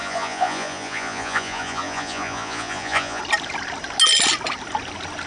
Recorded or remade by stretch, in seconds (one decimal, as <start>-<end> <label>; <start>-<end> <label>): 0.0-3.2 remade; 3.2-5.3 recorded